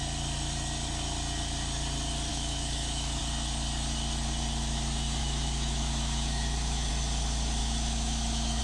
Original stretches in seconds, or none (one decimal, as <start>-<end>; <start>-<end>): 0.0-2.3; 3.2-5.2; 6.9-7.6